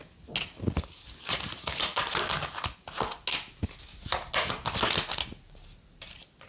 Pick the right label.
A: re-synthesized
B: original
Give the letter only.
B